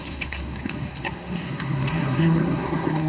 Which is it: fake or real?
fake